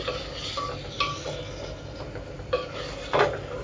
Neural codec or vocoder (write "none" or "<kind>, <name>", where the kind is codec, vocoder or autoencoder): none